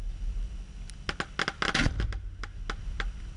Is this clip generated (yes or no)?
no